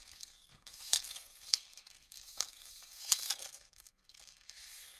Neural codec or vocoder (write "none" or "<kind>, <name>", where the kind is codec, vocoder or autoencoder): codec, SNAC